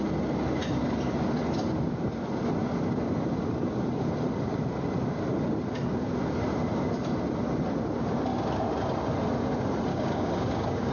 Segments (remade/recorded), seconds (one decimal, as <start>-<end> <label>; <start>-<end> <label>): 0.0-9.9 recorded; 9.9-10.9 remade